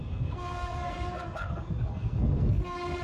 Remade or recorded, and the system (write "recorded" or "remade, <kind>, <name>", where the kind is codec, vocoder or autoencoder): remade, codec, SNAC